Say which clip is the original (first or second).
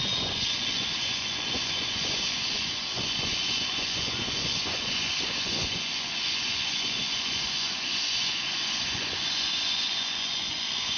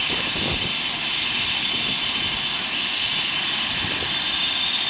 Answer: second